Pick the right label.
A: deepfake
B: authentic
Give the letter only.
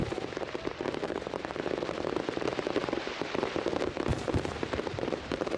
A